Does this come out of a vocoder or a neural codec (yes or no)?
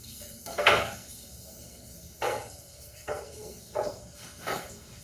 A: yes